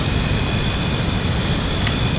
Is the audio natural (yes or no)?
yes